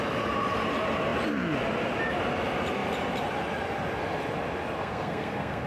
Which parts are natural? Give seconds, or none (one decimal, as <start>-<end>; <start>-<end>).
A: 0.0-4.8